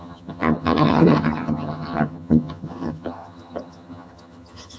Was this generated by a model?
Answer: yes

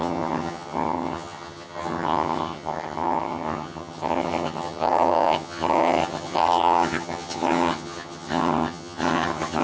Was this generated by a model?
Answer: yes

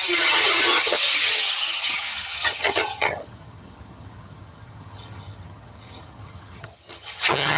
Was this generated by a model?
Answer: yes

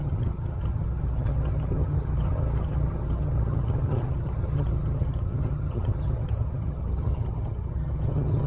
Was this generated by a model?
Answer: yes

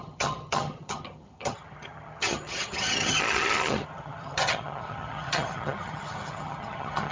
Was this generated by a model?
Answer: yes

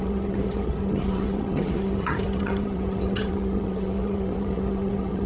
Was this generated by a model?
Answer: yes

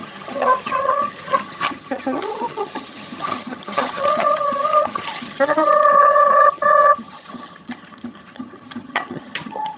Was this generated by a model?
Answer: yes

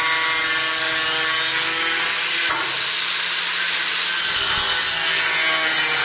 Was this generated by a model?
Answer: no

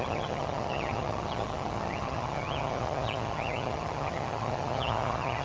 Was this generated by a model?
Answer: yes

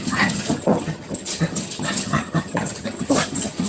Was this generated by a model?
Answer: yes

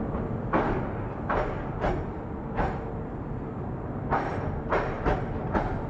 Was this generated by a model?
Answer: no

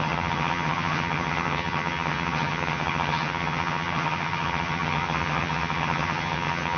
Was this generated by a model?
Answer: yes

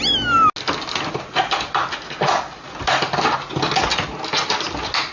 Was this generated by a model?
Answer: no